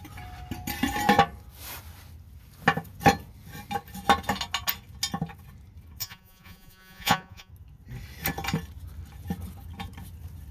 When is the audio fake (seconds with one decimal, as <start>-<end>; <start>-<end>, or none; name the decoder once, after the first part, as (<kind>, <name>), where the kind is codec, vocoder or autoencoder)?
6.0-7.5 (vocoder, Vocos)